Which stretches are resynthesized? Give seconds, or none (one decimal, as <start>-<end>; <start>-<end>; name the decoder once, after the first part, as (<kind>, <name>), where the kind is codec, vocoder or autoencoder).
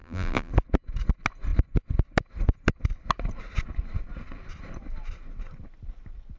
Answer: 0.0-0.5 (vocoder, BigVGAN v2)